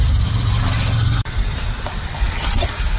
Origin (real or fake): real